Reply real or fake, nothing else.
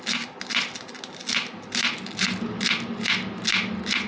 real